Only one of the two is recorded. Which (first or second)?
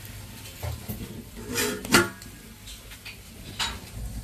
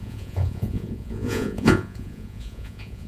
first